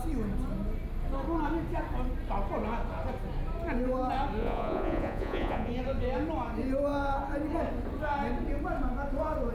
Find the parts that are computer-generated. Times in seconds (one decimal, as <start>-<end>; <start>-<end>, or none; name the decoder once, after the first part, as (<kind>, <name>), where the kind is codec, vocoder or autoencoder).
4.4-5.7 (vocoder, Vocos)